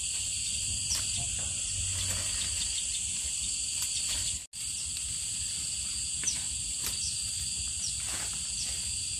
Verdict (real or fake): real